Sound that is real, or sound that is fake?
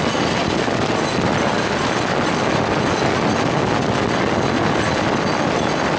real